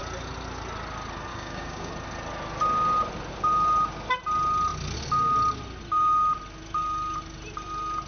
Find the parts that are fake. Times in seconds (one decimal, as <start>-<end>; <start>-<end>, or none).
1.3-1.9

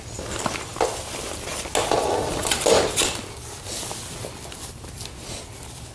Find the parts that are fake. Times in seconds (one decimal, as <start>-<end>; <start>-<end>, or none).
none

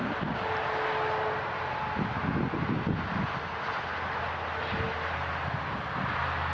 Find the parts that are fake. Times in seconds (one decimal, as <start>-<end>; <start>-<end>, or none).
none

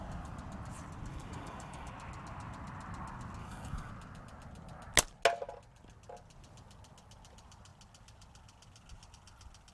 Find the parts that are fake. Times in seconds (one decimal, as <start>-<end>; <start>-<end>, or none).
1.1-1.9; 3.4-3.9

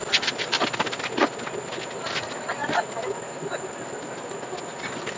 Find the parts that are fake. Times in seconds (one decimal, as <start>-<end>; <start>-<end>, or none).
none

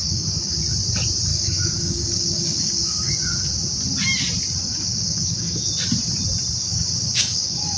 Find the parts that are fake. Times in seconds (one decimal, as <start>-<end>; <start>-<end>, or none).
0.0-0.6; 1.3-3.1; 4.6-5.7; 6.6-7.8

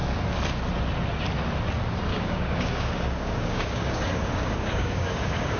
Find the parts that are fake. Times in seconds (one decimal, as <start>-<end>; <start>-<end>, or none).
2.1-5.6